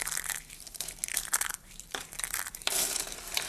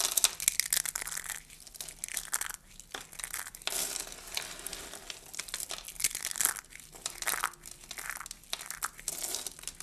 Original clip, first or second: second